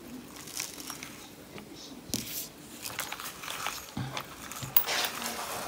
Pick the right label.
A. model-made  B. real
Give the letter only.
B